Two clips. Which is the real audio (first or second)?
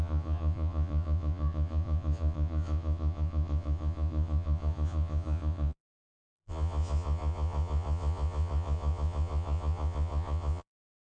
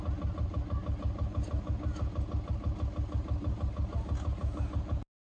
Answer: second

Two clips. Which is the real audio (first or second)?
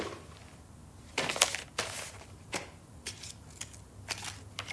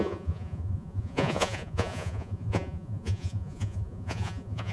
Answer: first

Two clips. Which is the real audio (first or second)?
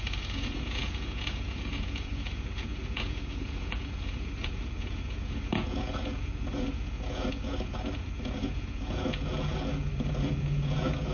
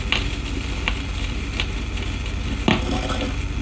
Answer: second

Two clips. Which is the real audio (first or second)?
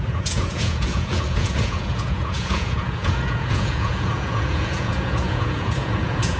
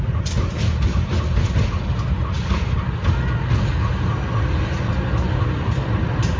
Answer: second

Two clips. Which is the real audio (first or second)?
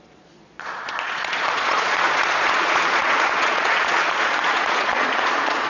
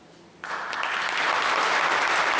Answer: second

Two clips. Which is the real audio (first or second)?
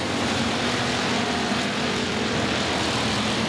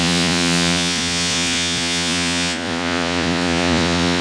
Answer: first